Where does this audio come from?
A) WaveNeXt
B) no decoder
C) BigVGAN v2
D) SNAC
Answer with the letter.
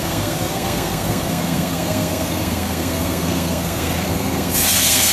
D